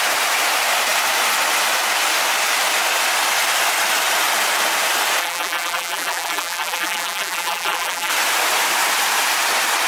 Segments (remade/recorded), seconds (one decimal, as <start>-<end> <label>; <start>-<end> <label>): 0.0-5.2 recorded; 5.2-8.1 remade; 8.1-9.9 recorded